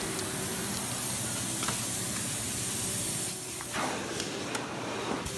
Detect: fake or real real